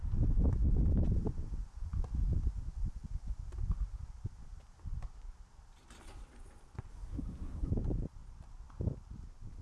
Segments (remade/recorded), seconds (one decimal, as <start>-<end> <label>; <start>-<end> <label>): 0.0-6.9 recorded; 6.9-7.7 remade; 7.7-9.6 recorded